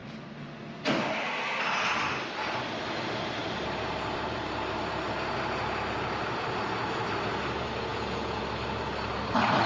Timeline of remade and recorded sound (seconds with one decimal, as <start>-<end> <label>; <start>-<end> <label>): 0.0-7.9 recorded; 7.9-8.4 remade; 8.4-9.7 recorded